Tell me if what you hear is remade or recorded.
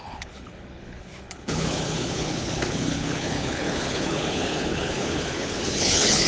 remade